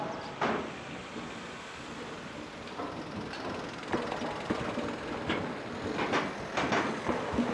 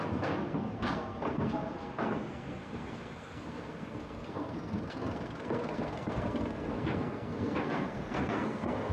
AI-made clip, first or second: second